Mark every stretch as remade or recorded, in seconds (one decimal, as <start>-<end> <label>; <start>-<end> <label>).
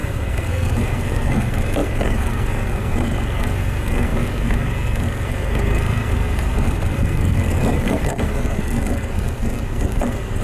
0.0-10.4 remade